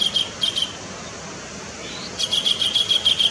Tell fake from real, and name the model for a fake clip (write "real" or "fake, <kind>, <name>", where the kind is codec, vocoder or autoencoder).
real